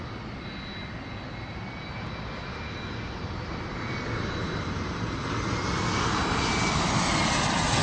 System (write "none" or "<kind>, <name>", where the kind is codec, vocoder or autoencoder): none